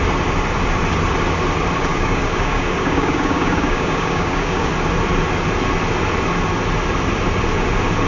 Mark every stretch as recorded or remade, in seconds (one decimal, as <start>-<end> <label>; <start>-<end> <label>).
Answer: 0.0-1.9 recorded; 1.9-4.7 remade; 4.7-8.1 recorded